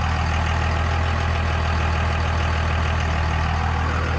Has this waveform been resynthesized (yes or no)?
no